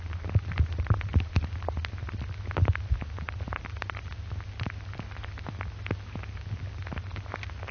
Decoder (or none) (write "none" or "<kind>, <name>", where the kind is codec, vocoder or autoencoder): none